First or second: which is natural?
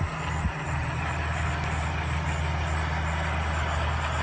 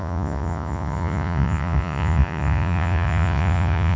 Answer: first